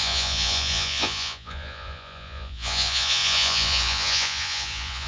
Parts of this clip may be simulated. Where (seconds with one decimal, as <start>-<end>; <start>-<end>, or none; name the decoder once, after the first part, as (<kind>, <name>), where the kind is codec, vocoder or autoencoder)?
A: 0.0-5.1 (vocoder, Vocos)